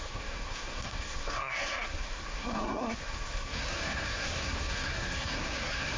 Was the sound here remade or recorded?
remade